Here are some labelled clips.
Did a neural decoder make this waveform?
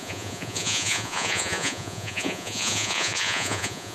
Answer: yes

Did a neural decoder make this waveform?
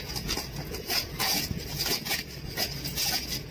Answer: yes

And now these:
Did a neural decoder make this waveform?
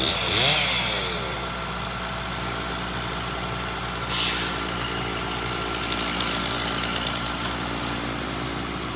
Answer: no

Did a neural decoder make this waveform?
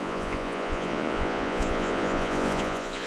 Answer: yes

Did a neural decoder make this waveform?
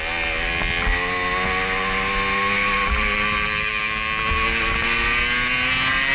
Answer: no